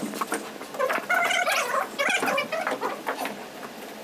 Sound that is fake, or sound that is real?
real